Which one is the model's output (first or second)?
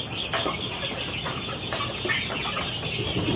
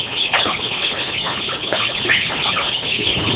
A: second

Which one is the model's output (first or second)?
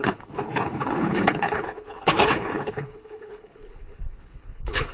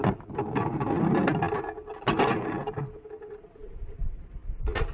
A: first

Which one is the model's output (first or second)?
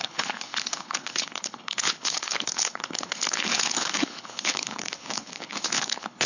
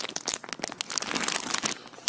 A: first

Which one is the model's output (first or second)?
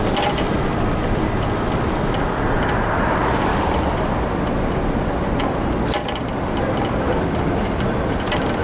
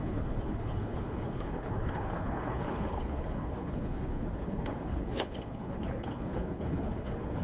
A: second